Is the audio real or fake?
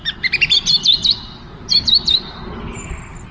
real